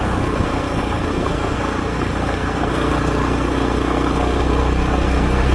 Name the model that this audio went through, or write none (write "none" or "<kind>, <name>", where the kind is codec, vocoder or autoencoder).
codec, SNAC